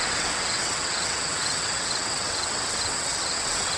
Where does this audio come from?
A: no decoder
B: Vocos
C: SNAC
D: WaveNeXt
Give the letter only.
D